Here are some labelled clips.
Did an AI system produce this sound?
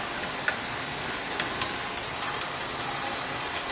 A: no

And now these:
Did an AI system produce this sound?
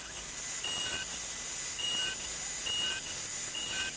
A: no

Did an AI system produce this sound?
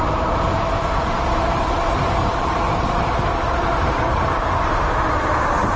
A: yes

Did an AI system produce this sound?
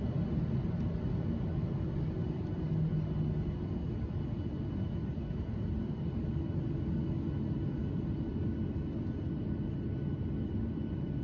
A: no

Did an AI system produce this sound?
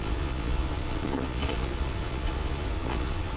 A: yes